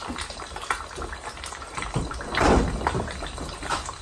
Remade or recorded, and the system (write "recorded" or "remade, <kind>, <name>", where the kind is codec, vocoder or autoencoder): recorded